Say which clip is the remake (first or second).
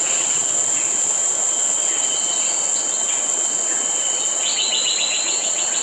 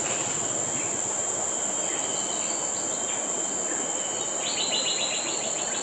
first